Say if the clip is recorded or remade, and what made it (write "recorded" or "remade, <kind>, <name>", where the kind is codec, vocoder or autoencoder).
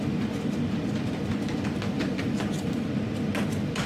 recorded